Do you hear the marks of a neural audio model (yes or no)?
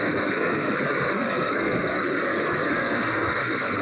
yes